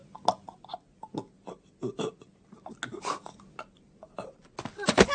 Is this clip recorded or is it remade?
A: recorded